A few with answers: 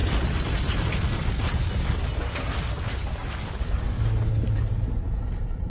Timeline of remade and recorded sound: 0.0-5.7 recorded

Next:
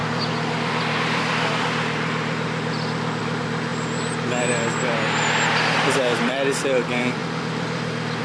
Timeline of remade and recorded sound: 0.0-3.7 remade; 3.7-4.4 recorded; 4.4-8.2 remade

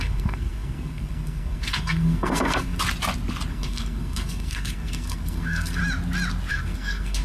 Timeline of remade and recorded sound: 0.0-2.8 remade; 2.8-3.5 recorded; 3.5-5.8 remade; 5.8-6.5 recorded; 6.5-7.2 remade

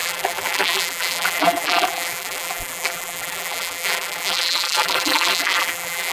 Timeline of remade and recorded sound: 0.0-6.1 remade

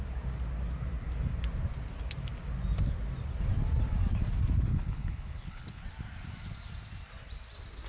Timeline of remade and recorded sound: 0.0-4.7 recorded; 4.7-5.8 remade; 5.8-7.9 recorded

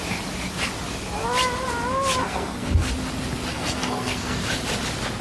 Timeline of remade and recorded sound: 0.0-2.2 recorded; 2.2-2.9 remade; 2.9-3.5 recorded; 3.5-4.4 remade; 4.4-5.2 recorded